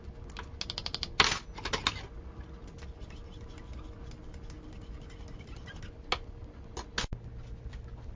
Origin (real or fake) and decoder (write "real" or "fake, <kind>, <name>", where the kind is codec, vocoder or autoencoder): real